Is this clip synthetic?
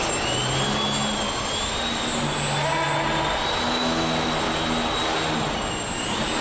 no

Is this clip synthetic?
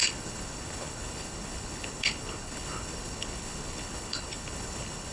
yes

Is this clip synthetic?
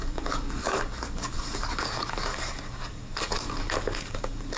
yes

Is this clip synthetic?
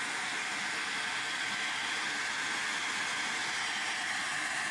no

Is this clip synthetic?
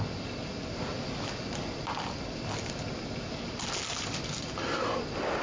no